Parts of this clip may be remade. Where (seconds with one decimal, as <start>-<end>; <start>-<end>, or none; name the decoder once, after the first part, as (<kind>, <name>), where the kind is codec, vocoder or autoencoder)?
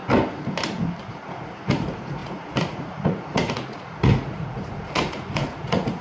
1.1-6.0 (vocoder, Vocos)